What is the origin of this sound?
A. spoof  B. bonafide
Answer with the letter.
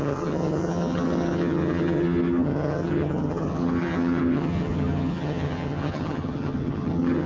A